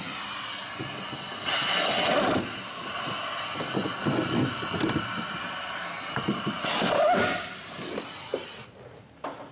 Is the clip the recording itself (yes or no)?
yes